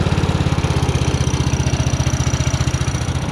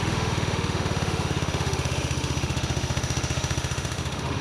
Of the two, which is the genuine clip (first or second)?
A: first